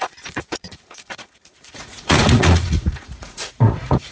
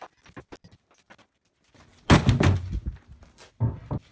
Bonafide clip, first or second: second